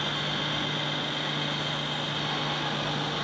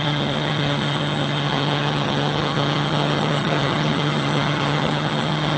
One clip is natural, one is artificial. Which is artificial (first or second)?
second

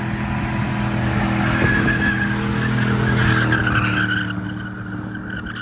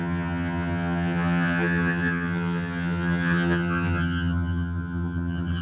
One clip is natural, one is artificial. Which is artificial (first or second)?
second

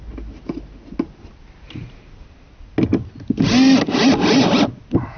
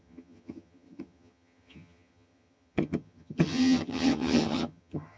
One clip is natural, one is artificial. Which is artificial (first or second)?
second